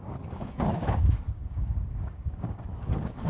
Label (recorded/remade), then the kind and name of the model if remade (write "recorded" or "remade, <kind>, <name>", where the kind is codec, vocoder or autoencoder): remade, codec, DAC